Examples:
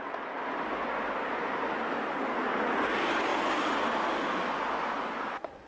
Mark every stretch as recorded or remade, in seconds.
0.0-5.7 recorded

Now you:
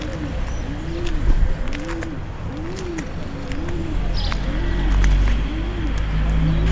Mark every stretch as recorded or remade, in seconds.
0.0-6.7 recorded

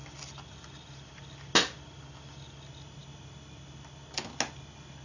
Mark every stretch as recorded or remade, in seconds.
0.0-5.0 recorded

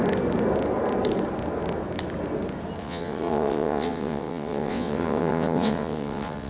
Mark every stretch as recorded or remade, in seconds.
0.0-2.8 recorded; 2.8-6.5 remade

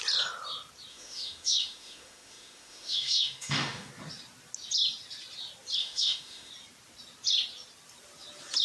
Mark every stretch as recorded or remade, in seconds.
0.0-0.9 recorded; 0.9-3.9 remade; 3.9-5.8 recorded; 5.8-6.5 remade; 6.5-8.6 recorded

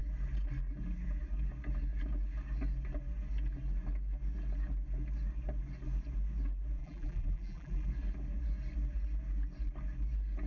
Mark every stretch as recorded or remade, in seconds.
0.0-6.8 recorded; 6.8-7.9 remade; 7.9-10.5 recorded

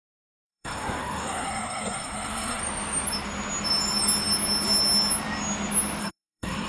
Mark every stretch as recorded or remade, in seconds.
0.0-2.6 remade; 2.6-6.0 recorded; 6.0-6.7 remade